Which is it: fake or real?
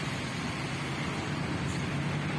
real